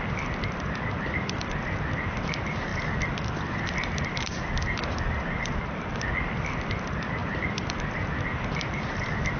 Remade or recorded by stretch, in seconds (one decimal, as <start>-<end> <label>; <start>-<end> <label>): 0.0-2.7 remade; 2.7-3.2 recorded; 3.2-9.4 remade